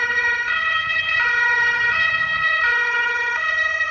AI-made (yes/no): yes